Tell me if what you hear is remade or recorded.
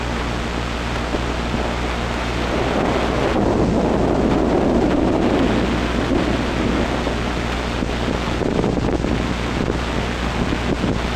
recorded